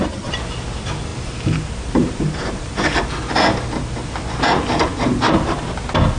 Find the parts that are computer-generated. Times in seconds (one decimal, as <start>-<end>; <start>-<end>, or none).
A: 1.1-3.1